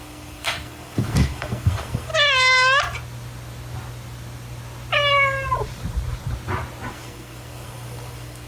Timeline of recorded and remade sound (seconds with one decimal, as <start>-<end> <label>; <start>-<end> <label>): 0.0-2.1 remade; 2.1-6.9 recorded; 6.9-8.5 remade